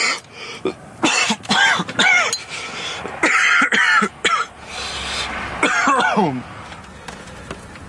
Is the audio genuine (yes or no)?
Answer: yes